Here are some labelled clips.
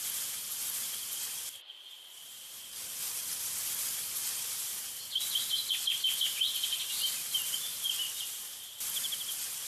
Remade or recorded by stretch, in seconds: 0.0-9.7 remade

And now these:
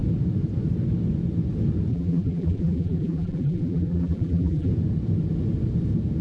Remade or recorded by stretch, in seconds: 0.0-1.9 recorded; 1.9-4.7 remade; 4.7-6.2 recorded

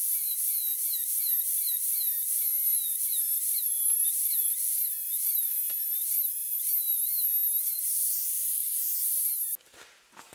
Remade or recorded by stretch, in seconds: 0.0-10.3 recorded